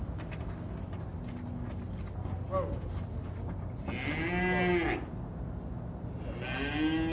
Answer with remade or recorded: recorded